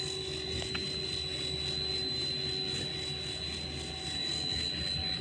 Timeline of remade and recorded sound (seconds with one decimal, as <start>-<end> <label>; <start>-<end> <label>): 0.0-5.2 recorded